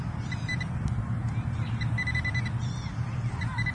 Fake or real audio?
real